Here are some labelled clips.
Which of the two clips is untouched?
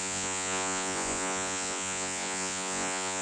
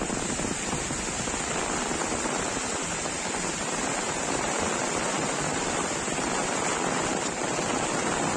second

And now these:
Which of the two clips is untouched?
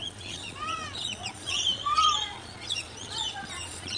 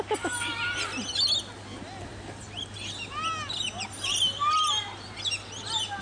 second